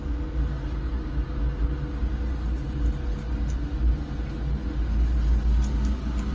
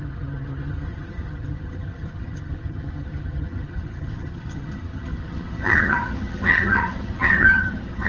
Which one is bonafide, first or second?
first